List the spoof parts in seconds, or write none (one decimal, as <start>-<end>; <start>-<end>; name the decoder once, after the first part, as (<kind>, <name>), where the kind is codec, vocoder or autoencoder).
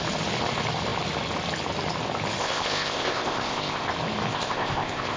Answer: 2.4-3.9 (codec, ZipCodec); 4.3-5.2